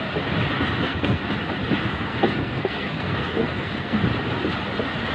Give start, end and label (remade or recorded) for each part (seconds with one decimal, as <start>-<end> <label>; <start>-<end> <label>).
0.0-0.8 recorded; 0.8-1.3 remade; 1.3-1.9 recorded; 1.9-4.0 remade; 4.0-5.1 recorded